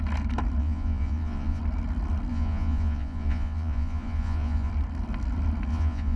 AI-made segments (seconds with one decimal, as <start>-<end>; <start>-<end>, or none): 0.6-1.6; 2.3-4.7; 5.7-6.2